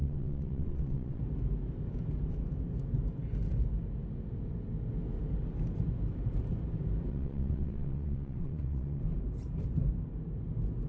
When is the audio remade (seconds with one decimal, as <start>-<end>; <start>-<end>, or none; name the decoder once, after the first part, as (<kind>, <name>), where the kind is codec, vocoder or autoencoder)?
0.0-1.2 (vocoder, WaveNeXt); 7.1-9.0